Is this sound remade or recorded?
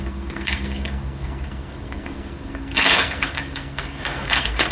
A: remade